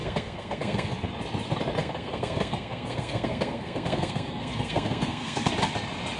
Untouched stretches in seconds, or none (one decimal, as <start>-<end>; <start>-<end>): 1.1-1.8; 5.5-6.2